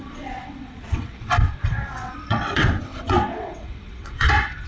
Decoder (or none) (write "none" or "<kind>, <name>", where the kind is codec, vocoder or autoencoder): vocoder, WaveNeXt